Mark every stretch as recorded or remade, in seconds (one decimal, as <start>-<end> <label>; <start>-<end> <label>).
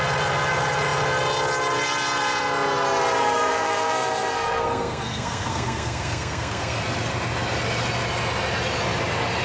0.0-3.2 recorded; 3.2-6.8 remade; 6.8-9.4 recorded